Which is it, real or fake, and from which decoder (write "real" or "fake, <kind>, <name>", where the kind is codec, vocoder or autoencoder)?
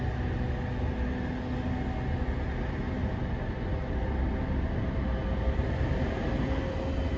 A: real